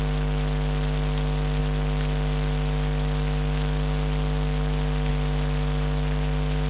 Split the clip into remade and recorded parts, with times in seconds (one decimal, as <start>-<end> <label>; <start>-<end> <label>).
0.0-6.7 recorded